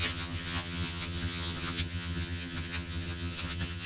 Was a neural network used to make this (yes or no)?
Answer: yes